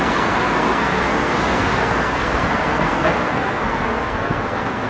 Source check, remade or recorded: remade